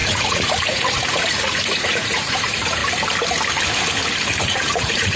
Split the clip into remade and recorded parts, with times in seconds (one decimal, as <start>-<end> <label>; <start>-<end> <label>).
0.0-2.8 remade; 2.8-4.4 recorded; 4.4-5.2 remade